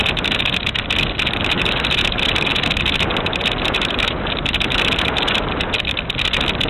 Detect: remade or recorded recorded